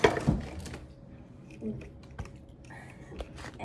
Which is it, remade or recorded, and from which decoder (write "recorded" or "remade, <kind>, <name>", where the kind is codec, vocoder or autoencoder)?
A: recorded